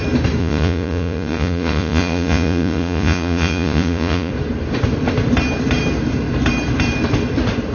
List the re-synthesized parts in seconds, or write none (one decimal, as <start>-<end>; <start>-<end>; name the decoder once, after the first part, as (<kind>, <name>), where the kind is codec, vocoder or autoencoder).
0.4-4.3 (vocoder, Vocos)